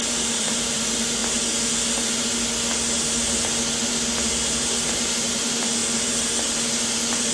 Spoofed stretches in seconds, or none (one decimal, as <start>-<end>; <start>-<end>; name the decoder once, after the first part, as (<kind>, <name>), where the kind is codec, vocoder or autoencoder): 0.0-1.2 (vocoder, BigVGAN v2); 4.6-5.8